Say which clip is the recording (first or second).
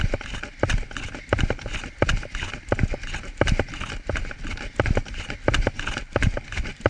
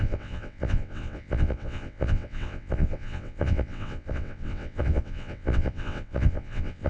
first